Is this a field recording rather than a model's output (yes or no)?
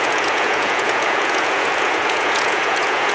no